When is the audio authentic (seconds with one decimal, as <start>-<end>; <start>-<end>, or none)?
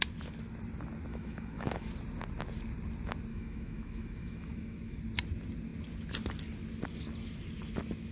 0.0-1.1; 1.9-3.3; 5.0-8.1